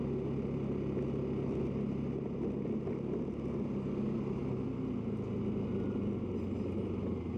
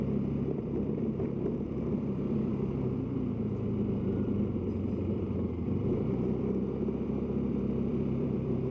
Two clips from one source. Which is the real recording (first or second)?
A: first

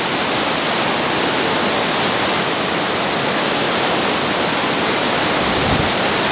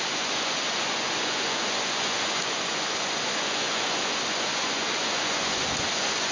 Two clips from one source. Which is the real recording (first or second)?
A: first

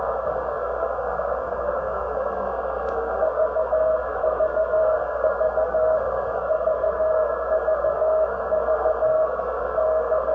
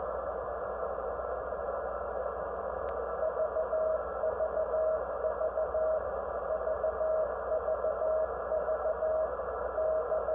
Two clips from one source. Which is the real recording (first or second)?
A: second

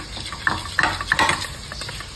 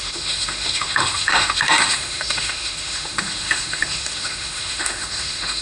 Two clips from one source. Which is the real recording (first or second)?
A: first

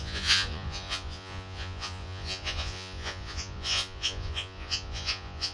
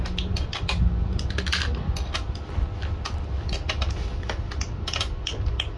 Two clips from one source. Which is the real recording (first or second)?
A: second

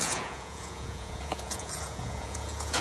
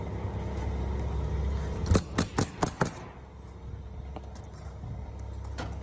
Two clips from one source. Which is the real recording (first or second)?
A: second